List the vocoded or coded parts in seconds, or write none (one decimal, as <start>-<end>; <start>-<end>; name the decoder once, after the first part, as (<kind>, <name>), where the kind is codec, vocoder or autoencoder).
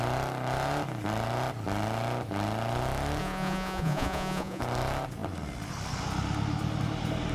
3.2-4.6 (vocoder, Vocos)